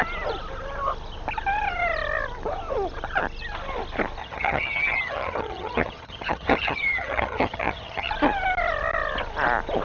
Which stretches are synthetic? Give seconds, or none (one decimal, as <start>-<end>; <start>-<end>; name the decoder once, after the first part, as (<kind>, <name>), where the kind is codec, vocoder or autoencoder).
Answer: 4.2-8.1 (vocoder, HiFi-GAN)